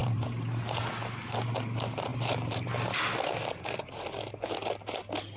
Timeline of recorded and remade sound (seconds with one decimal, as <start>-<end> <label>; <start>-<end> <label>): 0.0-0.9 remade; 0.9-2.1 recorded; 2.1-3.0 remade; 3.0-5.4 recorded